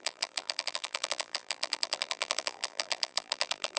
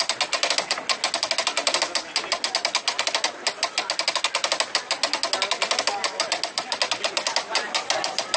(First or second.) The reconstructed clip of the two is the first